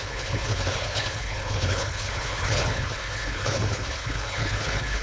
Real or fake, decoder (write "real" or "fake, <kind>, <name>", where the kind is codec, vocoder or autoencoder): fake, codec, HILCodec